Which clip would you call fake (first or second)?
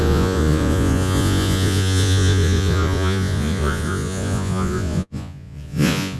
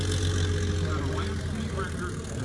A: first